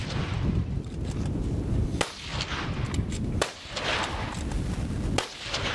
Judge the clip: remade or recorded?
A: recorded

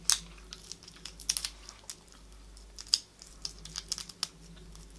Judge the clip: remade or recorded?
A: recorded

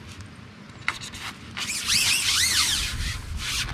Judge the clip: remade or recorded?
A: recorded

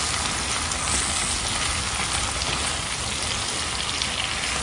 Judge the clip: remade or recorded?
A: recorded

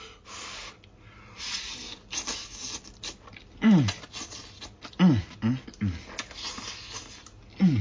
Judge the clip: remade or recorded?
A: recorded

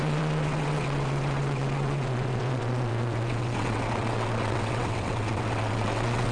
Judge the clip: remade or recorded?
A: remade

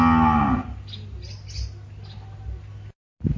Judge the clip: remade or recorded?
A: recorded